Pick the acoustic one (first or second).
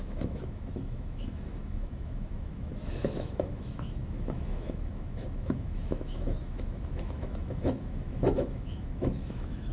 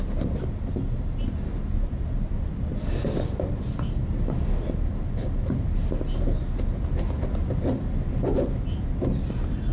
second